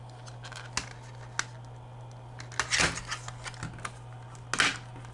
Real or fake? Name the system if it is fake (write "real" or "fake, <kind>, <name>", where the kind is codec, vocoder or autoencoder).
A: real